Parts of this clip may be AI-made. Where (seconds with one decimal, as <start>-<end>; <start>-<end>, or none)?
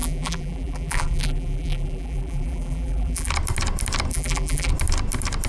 0.0-3.3; 4.1-4.7